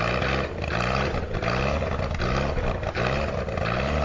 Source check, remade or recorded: recorded